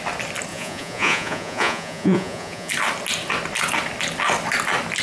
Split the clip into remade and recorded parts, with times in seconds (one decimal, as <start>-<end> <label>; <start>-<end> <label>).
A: 0.0-0.5 recorded; 0.5-2.7 remade; 2.7-5.0 recorded